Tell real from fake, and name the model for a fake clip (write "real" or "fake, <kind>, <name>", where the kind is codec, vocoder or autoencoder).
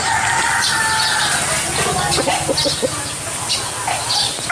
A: real